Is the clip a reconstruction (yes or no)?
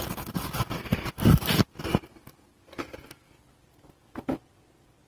no